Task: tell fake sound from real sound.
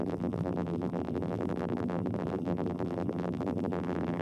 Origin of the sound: fake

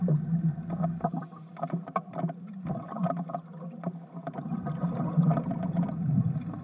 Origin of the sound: fake